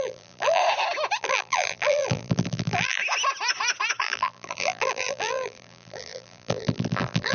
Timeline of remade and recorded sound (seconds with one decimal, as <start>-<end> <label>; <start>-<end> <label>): 0.0-0.6 remade; 0.6-1.2 recorded; 1.2-3.0 remade; 3.0-4.0 recorded; 4.0-7.3 remade